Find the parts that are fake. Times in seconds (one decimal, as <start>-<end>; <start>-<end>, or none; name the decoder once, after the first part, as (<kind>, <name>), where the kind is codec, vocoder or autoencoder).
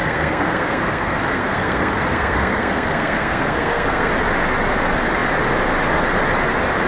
0.0-4.1 (codec, SNAC)